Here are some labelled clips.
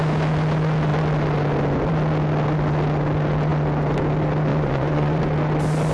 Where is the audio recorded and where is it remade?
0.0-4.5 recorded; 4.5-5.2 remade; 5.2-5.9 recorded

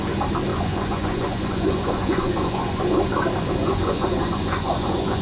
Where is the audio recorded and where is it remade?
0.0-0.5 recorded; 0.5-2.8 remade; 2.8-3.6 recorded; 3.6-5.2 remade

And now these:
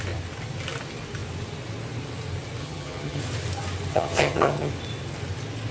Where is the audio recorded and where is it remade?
0.0-2.6 recorded; 2.6-3.2 remade; 3.2-3.9 recorded; 3.9-4.7 remade; 4.7-5.7 recorded

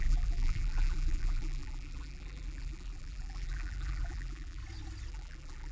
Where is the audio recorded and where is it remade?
0.0-4.6 remade; 4.6-5.1 recorded; 5.1-5.7 remade